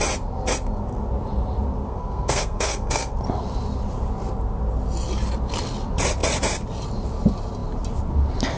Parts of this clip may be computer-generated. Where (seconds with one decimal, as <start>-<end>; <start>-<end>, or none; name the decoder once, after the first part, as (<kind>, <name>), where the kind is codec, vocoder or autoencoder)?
1.9-3.1 (codec, SNAC)